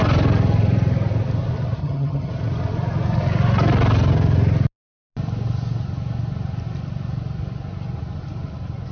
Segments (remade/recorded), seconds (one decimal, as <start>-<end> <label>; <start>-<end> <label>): 0.0-1.8 recorded; 1.8-2.3 remade; 2.3-8.9 recorded